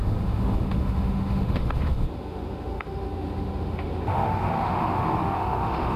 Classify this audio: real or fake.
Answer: fake